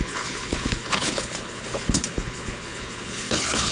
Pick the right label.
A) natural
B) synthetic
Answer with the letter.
B